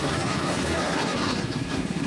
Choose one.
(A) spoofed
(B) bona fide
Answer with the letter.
A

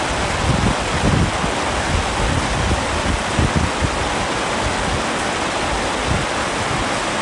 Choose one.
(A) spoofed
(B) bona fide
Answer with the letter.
B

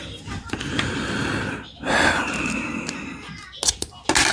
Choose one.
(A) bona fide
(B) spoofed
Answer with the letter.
A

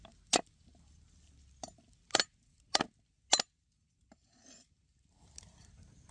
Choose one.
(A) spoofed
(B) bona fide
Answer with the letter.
B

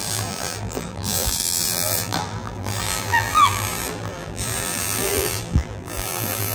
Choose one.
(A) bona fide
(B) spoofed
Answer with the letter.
B